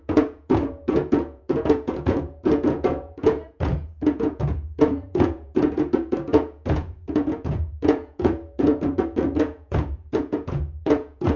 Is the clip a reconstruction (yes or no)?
yes